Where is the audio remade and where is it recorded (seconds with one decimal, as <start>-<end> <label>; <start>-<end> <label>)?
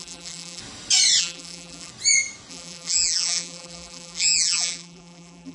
0.0-0.6 remade; 0.6-1.2 recorded; 1.2-1.9 remade; 1.9-2.5 recorded; 2.5-5.5 remade